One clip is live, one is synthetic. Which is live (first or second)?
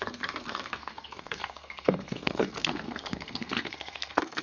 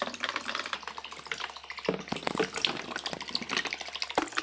second